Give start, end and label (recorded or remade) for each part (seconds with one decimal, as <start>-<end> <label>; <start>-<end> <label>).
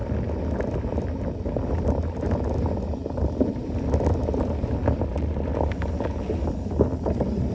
0.0-7.5 recorded